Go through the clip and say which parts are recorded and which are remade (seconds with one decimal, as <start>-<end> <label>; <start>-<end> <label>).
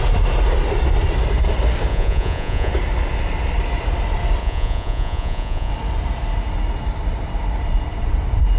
0.0-1.9 recorded; 1.9-2.7 remade; 2.7-4.4 recorded; 4.4-5.7 remade; 5.7-8.6 recorded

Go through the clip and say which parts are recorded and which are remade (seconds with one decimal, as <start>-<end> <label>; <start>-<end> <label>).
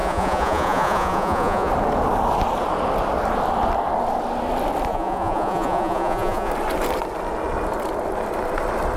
0.0-1.7 remade; 1.7-4.9 recorded; 4.9-6.5 remade; 6.5-9.0 recorded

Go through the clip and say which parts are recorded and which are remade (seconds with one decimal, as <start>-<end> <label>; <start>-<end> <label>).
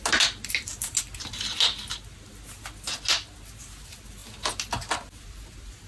0.0-5.9 recorded